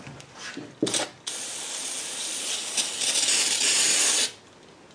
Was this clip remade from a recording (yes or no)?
no